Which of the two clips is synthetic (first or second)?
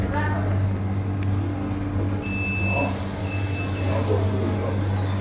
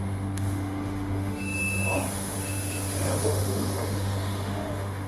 second